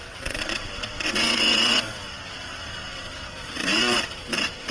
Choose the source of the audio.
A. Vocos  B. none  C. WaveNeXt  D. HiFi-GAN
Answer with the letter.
C